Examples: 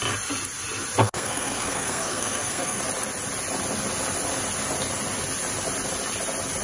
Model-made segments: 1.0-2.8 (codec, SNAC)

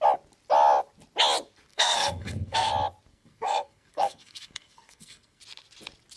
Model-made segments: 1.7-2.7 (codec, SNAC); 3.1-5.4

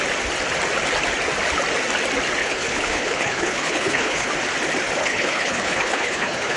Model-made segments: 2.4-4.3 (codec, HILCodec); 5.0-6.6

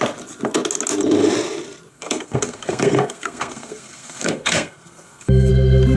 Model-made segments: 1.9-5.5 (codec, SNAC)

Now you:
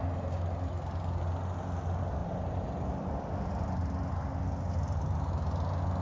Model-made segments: 2.2-3.5 (vocoder, BigVGAN v2)